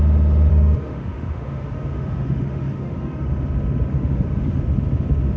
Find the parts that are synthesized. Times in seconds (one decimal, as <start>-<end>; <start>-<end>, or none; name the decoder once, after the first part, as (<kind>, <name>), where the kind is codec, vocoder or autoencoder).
0.5-3.3 (autoencoder, DAC-VAE); 3.9-4.6